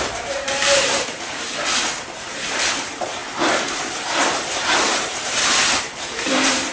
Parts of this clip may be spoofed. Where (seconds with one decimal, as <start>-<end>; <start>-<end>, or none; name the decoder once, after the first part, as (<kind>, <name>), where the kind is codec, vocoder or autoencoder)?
0.0-1.5 (vocoder, BigVGAN v2); 2.2-6.7